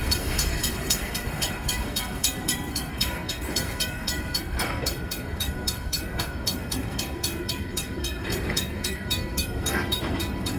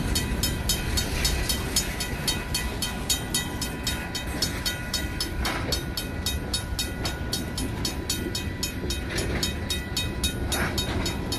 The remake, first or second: first